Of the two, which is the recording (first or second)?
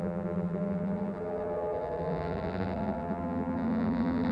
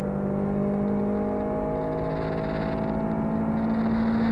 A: second